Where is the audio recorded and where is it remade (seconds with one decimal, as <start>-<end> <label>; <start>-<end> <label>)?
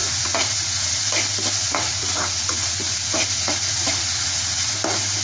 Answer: 0.0-1.0 remade; 1.0-1.6 recorded; 1.6-4.7 remade; 4.7-5.2 recorded